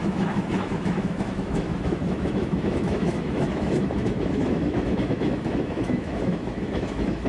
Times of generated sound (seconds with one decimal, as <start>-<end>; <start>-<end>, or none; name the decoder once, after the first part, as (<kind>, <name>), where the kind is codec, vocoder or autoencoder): 0.0-7.3 (autoencoder, DAC-VAE)